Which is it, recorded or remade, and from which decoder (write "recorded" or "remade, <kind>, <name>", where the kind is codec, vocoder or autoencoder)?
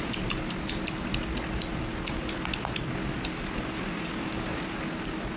recorded